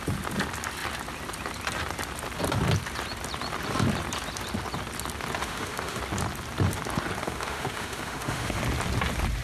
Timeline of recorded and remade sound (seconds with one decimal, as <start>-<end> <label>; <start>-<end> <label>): 0.0-5.4 recorded; 5.4-6.0 remade; 6.0-7.2 recorded; 7.2-8.6 remade; 8.6-9.4 recorded